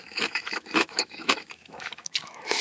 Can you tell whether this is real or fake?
fake